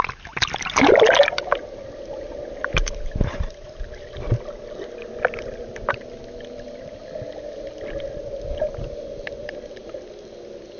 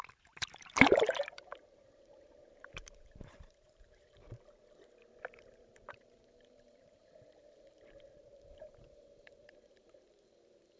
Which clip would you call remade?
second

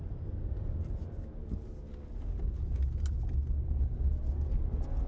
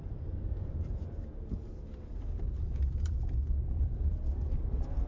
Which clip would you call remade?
second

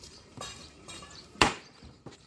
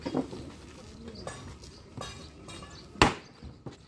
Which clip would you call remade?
first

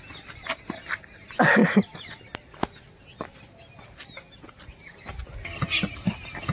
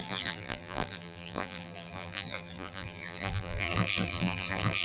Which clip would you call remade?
second